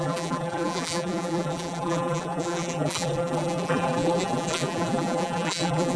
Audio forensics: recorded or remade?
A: remade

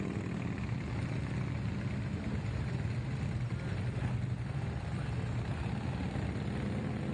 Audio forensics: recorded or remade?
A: recorded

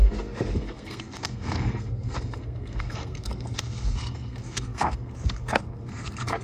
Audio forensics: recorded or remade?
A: remade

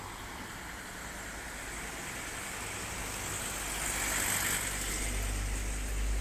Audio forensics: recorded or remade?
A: recorded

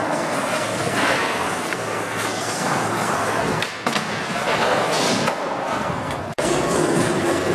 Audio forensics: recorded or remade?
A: remade